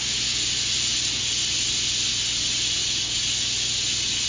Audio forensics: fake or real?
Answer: real